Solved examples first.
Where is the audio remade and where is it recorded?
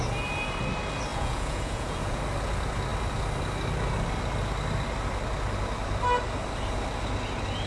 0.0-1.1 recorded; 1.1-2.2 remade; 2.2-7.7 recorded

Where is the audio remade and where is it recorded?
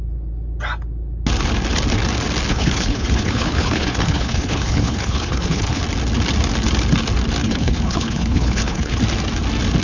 0.0-2.5 recorded; 2.5-5.8 remade; 5.8-7.4 recorded; 7.4-9.0 remade; 9.0-9.8 recorded